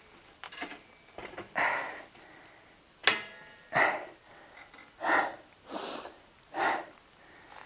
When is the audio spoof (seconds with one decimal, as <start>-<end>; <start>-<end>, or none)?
none